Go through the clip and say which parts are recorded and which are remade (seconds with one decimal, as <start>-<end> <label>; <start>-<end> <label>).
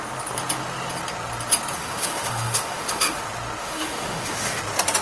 0.0-1.8 recorded; 1.8-3.2 remade; 3.2-3.6 recorded; 3.6-4.6 remade; 4.6-5.0 recorded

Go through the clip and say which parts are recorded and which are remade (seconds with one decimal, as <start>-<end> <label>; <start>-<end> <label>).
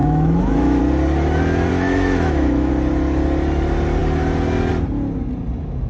0.0-0.8 remade; 0.8-1.7 recorded; 1.7-2.7 remade; 2.7-5.9 recorded